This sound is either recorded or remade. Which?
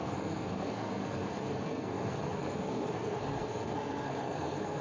remade